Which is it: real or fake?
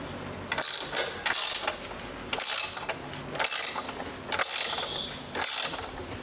real